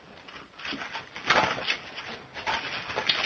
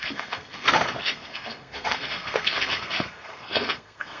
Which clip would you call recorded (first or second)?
first